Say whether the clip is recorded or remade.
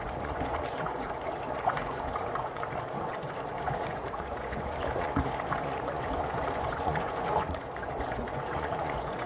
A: remade